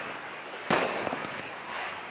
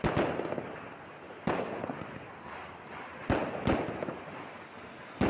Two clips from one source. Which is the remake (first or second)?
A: first